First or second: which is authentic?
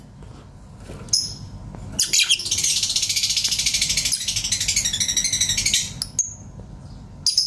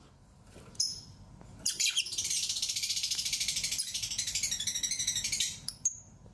first